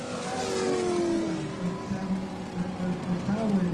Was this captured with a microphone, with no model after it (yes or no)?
yes